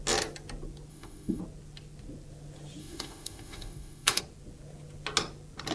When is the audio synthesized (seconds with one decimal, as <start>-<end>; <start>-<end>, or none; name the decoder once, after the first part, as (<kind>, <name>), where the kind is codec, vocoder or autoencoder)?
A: 0.9-1.4 (autoencoder, DAC-VAE); 2.8-4.2